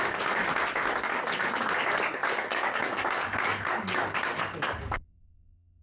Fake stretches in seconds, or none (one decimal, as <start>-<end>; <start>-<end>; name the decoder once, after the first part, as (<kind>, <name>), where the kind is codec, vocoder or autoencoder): 0.0-0.4 (codec, DAC); 1.0-5.8